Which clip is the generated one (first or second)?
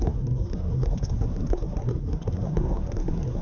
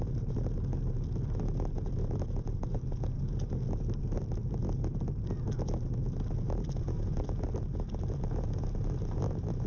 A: first